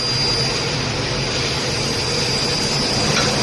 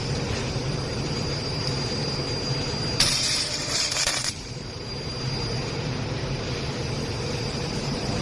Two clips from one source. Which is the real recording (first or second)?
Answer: first